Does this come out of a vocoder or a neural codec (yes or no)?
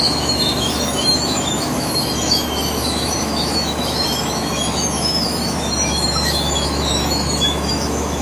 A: yes